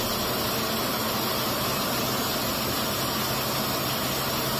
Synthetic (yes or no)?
no